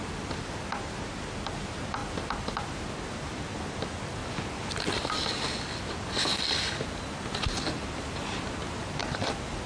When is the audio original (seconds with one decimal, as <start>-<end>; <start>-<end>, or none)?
0.0-2.0; 2.9-9.7